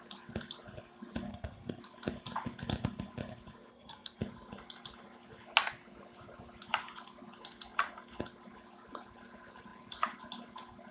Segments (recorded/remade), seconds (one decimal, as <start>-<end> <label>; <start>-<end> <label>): 0.0-1.3 recorded; 1.3-1.8 remade; 1.8-3.7 recorded; 3.7-4.2 remade; 4.2-10.9 recorded